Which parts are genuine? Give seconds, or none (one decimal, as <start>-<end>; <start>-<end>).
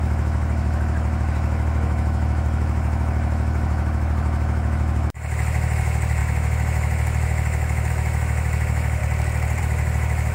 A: 9.0-9.6